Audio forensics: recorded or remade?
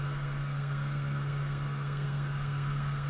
remade